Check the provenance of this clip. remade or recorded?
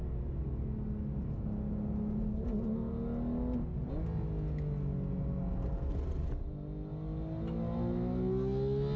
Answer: recorded